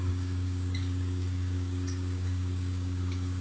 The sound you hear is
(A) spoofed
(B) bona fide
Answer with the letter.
A